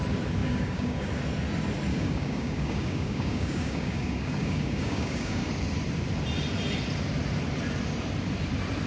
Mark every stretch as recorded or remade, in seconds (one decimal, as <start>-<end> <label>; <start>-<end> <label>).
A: 0.0-0.4 recorded; 0.4-1.1 remade; 1.1-1.9 recorded; 1.9-5.5 remade; 5.5-8.9 recorded